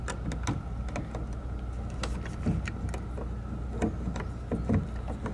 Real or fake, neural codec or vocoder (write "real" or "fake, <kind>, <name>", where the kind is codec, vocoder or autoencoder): real